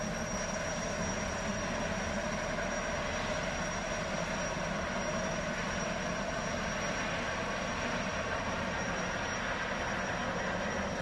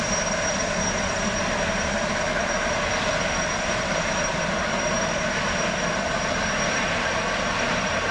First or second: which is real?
first